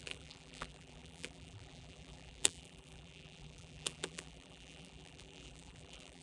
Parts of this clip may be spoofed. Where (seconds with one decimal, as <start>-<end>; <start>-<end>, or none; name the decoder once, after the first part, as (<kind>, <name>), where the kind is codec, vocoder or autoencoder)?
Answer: 0.0-6.2 (vocoder, BigVGAN v2)